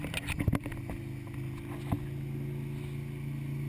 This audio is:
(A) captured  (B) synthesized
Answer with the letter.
A